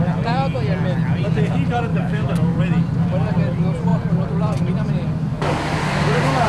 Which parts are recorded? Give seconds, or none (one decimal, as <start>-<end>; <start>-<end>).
0.0-1.9; 2.6-5.3